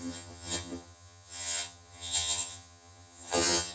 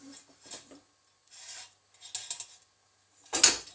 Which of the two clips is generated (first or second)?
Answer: first